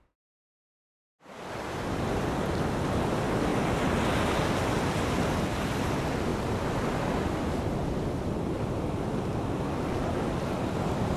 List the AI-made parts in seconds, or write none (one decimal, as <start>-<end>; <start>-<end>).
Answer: 1.1-2.5; 6.3-7.6